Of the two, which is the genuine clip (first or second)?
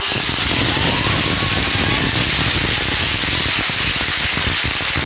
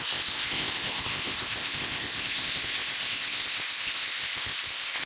first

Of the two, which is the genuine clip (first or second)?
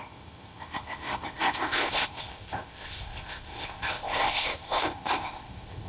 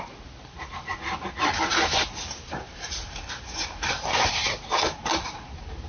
second